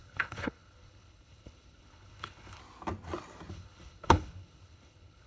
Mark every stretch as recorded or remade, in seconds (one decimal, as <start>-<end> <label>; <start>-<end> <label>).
0.0-2.6 remade; 2.6-3.5 recorded; 3.5-5.3 remade